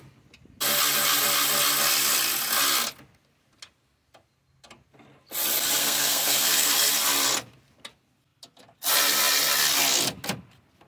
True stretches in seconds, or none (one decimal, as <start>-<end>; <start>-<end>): 0.0-5.8; 6.7-10.9